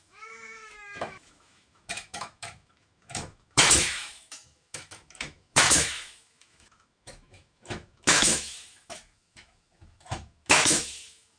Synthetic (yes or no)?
yes